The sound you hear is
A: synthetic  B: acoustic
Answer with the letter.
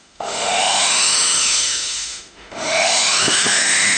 A